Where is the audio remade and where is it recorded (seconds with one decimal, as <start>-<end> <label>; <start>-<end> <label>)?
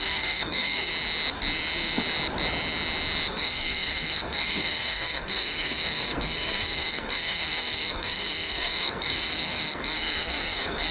0.0-0.9 remade; 0.9-3.3 recorded; 3.3-10.9 remade